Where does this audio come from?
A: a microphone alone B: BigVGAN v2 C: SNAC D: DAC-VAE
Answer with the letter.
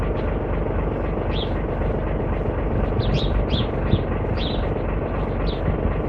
A